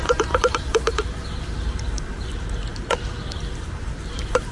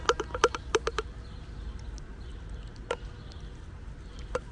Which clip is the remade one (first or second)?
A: first